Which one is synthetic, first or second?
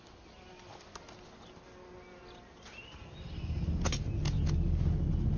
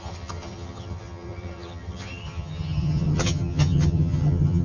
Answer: second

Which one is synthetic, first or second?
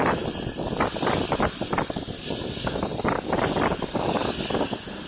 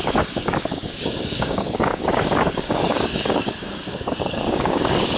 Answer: second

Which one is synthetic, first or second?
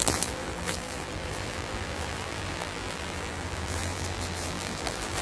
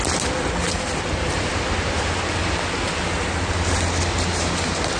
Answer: first